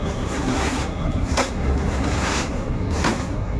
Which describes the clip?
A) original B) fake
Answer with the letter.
B